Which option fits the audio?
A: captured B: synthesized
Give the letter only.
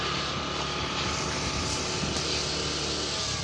A